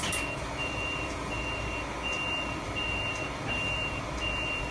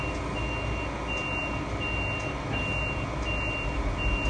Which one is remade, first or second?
first